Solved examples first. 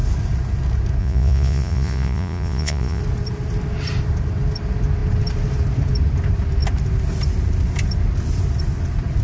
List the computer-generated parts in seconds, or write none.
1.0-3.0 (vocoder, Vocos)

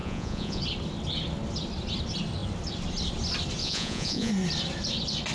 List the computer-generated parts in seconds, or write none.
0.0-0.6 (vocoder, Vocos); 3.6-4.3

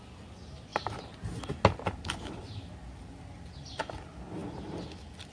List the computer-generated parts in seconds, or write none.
none